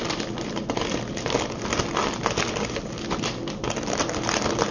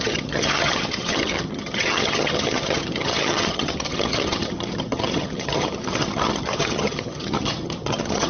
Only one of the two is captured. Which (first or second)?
first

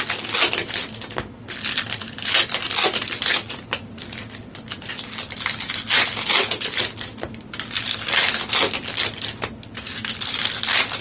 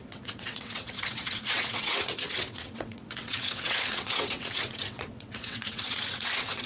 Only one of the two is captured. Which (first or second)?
first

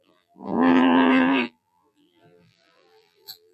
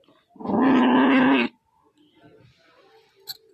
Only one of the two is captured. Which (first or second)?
second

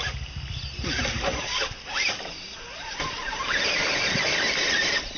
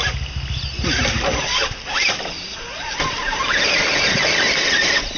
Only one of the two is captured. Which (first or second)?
second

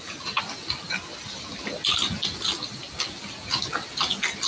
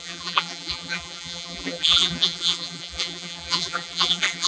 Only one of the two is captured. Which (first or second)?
first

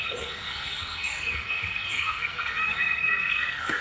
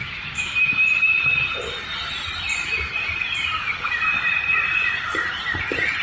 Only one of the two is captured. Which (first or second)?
second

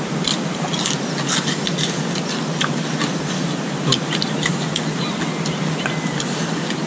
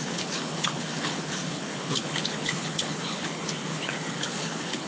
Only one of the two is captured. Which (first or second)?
first